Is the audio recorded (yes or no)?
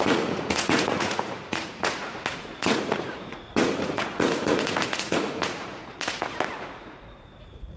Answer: no